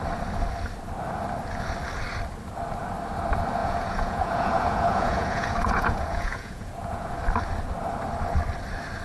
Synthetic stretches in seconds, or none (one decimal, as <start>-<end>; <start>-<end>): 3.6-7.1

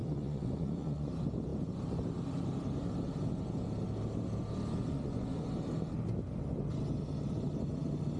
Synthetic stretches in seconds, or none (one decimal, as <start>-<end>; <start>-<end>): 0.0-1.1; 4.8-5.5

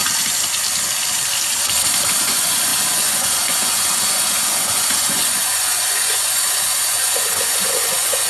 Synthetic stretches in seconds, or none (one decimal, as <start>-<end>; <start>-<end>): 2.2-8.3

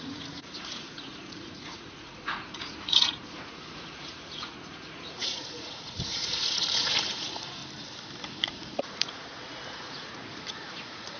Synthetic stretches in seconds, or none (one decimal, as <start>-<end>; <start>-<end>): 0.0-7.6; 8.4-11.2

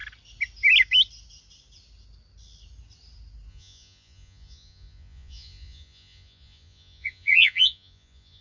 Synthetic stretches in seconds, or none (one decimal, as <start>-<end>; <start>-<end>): 3.5-8.4

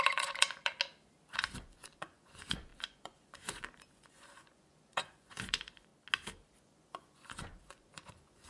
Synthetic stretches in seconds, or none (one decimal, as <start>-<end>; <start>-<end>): 0.0-0.7; 1.3-5.9; 6.6-8.5

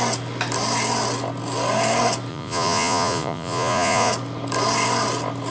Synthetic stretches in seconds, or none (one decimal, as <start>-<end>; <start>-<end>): 2.3-4.1

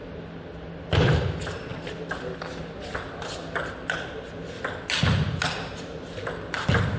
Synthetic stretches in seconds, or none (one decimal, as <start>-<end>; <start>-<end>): none